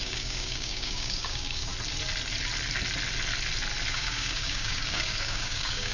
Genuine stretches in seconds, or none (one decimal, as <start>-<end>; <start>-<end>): 1.7-3.9